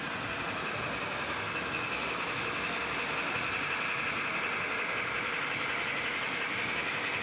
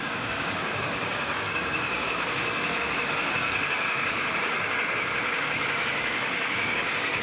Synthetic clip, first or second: second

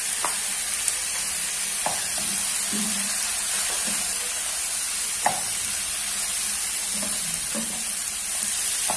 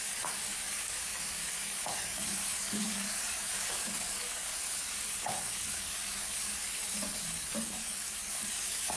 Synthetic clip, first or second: second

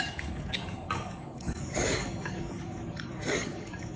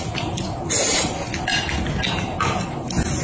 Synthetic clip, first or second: first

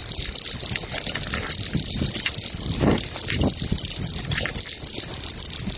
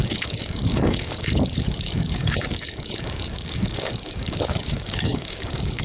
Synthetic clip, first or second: second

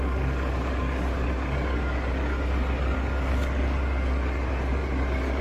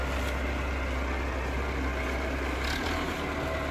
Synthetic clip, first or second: first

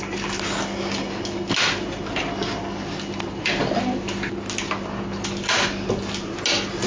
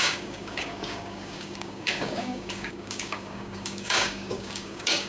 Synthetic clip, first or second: second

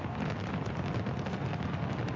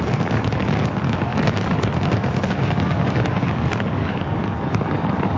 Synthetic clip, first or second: second